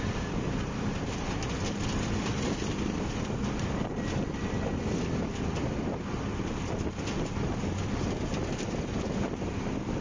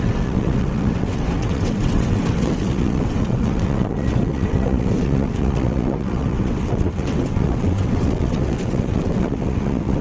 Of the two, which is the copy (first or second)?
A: second